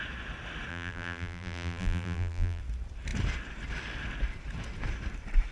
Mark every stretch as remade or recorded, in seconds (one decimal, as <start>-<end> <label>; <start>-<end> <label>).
0.0-0.7 recorded; 0.7-2.6 remade; 2.6-5.5 recorded